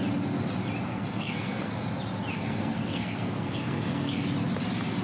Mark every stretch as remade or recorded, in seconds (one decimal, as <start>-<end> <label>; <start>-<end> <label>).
0.0-0.9 recorded; 0.9-1.7 remade; 1.7-2.3 recorded; 2.3-4.2 remade; 4.2-5.0 recorded